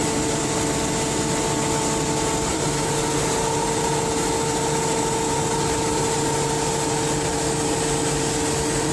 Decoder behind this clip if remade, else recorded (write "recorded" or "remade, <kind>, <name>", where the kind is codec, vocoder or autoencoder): recorded